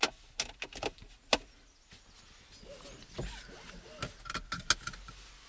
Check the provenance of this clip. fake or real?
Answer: real